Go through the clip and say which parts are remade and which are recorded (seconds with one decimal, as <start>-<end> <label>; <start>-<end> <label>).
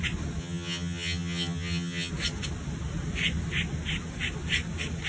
0.0-0.4 recorded; 0.4-2.1 remade; 2.1-5.1 recorded